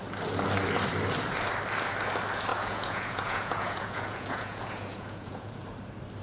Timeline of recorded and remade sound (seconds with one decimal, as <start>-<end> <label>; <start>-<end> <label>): 0.0-2.5 recorded; 2.5-5.5 remade; 5.5-6.2 recorded